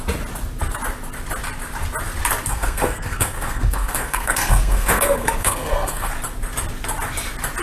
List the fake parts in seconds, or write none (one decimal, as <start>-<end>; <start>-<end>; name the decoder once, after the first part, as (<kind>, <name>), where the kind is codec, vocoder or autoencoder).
2.5-6.1 (codec, SNAC)